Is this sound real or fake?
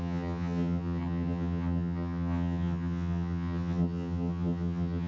fake